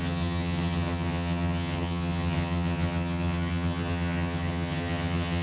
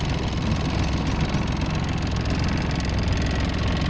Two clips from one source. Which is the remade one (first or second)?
first